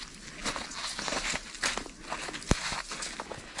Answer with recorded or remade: recorded